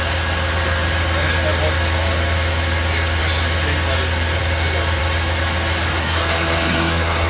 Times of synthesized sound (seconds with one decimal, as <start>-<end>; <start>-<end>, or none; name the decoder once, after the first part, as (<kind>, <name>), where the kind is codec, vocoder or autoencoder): 6.0-7.3 (codec, SNAC)